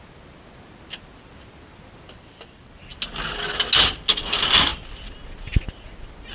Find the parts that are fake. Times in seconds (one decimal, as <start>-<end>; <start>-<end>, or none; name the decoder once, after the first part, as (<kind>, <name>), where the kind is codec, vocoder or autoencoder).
none